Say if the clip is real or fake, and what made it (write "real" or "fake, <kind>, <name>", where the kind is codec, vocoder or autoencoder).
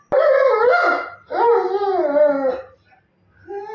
real